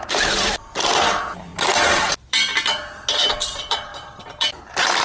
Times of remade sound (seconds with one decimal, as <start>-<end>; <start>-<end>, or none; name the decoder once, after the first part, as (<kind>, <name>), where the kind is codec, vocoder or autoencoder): 0.0-5.0 (vocoder, BigVGAN v2)